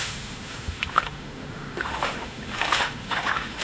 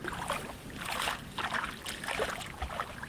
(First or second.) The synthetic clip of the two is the first